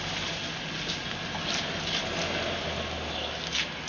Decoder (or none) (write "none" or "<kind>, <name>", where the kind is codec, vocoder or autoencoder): none